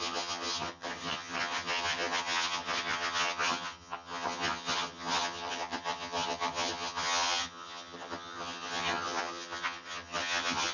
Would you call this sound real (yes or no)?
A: no